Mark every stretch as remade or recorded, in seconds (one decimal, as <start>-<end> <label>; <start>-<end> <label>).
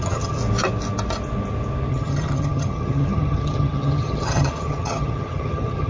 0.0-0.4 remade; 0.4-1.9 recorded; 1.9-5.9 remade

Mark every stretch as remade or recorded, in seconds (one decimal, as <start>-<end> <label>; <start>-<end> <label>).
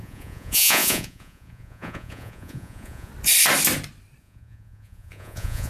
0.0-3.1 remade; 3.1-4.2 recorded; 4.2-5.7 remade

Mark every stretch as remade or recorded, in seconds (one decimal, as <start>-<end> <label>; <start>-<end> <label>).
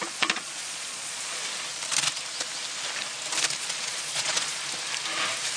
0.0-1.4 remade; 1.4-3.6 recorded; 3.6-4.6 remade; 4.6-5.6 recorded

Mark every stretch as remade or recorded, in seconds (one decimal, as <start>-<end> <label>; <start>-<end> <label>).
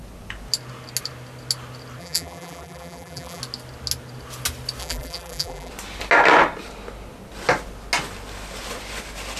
0.0-2.0 recorded; 2.0-3.4 remade; 3.4-4.8 recorded; 4.8-5.7 remade; 5.7-9.4 recorded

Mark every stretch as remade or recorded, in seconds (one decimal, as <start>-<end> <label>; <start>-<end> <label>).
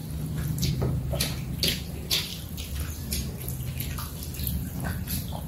0.0-5.5 recorded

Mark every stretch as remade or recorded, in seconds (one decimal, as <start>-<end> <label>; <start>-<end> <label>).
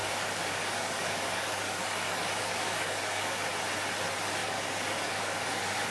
0.0-3.5 remade; 3.5-4.4 recorded; 4.4-5.9 remade